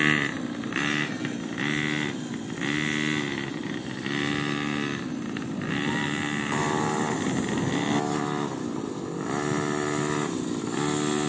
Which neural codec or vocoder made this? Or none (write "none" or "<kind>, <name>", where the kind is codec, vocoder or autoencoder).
none